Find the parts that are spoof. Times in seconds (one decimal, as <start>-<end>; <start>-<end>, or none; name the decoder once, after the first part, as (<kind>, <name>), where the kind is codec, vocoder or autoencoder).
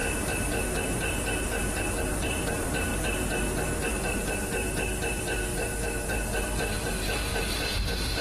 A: 1.9-2.9 (vocoder, BigVGAN v2); 3.9-8.2